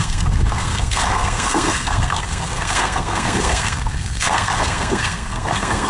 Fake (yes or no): yes